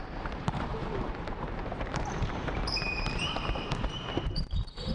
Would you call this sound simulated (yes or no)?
yes